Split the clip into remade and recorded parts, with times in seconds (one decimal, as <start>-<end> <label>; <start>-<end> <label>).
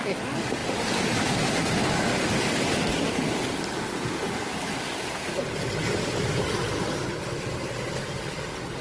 0.0-0.6 recorded; 0.6-1.4 remade; 1.4-8.8 recorded